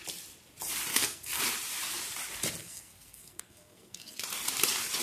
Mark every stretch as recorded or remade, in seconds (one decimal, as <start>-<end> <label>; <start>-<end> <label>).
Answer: 0.0-0.9 recorded; 0.9-1.4 remade; 1.4-2.6 recorded; 2.6-4.2 remade; 4.2-5.0 recorded